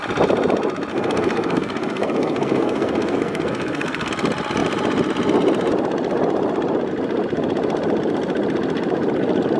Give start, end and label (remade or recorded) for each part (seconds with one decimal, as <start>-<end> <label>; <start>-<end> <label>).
0.0-0.9 recorded; 0.9-4.1 remade; 4.1-9.6 recorded